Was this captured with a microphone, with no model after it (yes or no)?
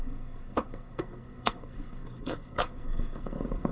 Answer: no